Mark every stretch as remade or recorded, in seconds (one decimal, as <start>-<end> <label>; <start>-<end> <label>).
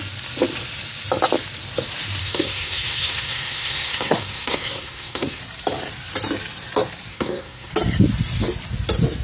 0.0-2.2 recorded; 2.2-5.4 remade; 5.4-7.1 recorded; 7.1-7.7 remade; 7.7-9.2 recorded